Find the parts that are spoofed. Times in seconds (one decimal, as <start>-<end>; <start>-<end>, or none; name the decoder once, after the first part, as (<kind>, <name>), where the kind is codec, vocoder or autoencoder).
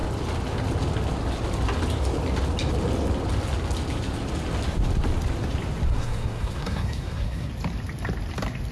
5.9-7.5 (codec, SNAC)